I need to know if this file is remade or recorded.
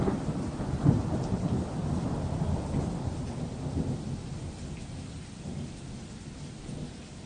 recorded